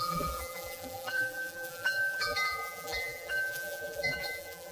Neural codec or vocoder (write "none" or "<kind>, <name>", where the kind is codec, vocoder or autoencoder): vocoder, BigVGAN v2